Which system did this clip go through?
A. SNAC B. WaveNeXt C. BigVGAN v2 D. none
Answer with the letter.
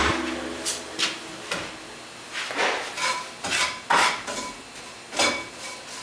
D